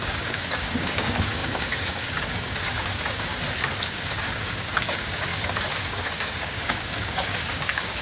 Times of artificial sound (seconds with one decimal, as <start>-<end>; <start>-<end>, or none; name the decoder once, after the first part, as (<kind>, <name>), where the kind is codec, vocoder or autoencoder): 0.0-3.3 (codec, DAC); 3.9-8.0